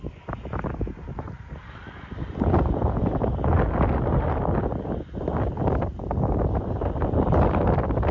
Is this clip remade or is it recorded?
recorded